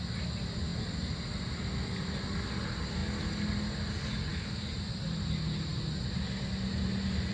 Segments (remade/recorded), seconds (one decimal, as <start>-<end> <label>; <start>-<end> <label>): 0.0-7.3 recorded